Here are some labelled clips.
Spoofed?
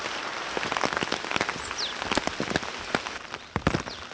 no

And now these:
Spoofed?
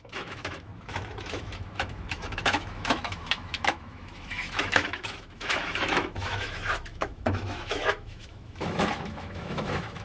yes